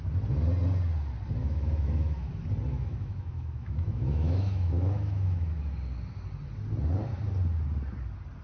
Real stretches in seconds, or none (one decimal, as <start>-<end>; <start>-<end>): 0.0-1.4; 2.3-2.7; 5.6-8.4